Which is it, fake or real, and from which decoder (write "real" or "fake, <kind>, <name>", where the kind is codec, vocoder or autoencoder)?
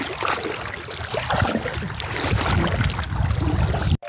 real